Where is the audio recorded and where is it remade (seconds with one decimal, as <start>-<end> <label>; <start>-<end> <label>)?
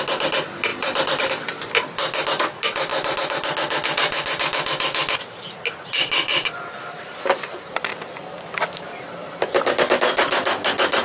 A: 0.0-0.7 recorded; 0.7-1.3 remade; 1.3-6.3 recorded; 6.3-8.2 remade; 8.2-11.0 recorded